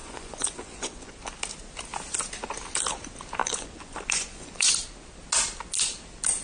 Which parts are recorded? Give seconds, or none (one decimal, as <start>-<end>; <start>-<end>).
1.1-3.4; 4.7-6.4